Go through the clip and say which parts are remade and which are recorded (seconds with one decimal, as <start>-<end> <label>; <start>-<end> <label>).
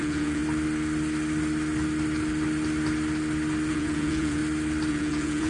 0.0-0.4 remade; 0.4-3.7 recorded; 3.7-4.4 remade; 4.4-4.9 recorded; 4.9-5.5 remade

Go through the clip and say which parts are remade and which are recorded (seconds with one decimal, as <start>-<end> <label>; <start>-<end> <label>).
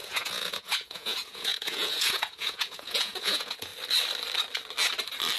0.0-3.7 remade; 3.7-5.4 recorded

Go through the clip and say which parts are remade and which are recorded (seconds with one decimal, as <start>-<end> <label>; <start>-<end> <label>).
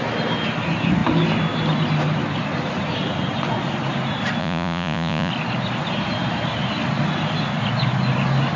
0.0-4.4 recorded; 4.4-5.3 remade; 5.3-8.6 recorded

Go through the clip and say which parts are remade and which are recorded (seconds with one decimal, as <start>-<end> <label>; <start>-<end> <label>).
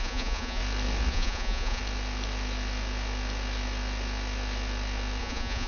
0.0-0.6 remade; 0.6-1.1 recorded; 1.1-1.8 remade; 1.8-5.2 recorded; 5.2-5.7 remade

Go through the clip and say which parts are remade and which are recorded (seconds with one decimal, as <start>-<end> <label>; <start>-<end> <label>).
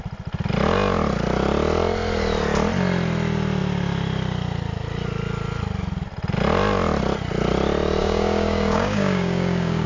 0.0-8.0 recorded; 8.0-9.9 remade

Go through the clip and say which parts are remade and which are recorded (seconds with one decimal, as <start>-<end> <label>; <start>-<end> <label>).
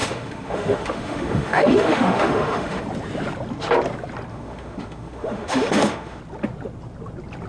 0.0-2.8 remade; 2.8-4.3 recorded; 4.3-6.2 remade; 6.2-7.5 recorded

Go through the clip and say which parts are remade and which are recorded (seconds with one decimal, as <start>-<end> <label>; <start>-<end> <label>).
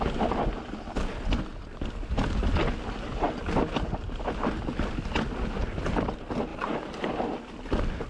0.0-6.5 recorded; 6.5-7.2 remade; 7.2-8.1 recorded